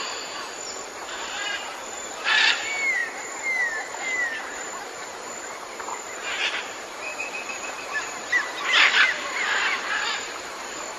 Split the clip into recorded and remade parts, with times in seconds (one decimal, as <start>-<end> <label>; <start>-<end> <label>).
0.0-3.0 remade; 3.0-4.4 recorded; 4.4-11.0 remade